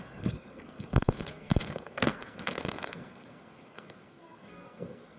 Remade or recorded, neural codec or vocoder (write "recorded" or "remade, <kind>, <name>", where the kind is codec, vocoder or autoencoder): remade, codec, SNAC